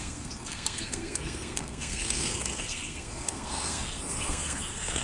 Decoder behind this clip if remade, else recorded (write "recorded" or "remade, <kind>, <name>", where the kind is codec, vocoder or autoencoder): remade, codec, SNAC